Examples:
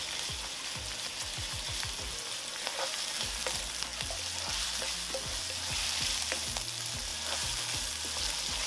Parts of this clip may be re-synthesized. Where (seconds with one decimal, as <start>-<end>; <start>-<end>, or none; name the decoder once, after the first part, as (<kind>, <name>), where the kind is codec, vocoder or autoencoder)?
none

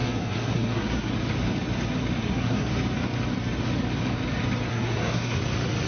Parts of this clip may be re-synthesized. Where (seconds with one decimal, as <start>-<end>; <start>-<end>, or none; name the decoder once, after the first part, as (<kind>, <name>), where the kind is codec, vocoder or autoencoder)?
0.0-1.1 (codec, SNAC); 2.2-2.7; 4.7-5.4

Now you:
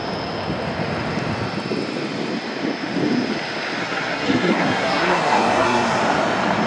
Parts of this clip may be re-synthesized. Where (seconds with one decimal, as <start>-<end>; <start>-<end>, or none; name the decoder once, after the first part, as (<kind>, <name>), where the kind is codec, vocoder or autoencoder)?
3.8-6.0 (codec, SNAC)